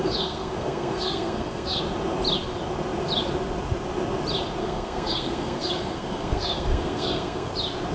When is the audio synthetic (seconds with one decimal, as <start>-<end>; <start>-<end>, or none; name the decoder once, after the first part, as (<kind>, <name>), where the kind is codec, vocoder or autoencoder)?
0.0-1.8 (codec, SNAC); 4.6-7.5